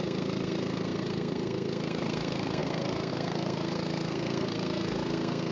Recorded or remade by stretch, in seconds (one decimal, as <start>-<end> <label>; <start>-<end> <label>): 0.0-5.5 remade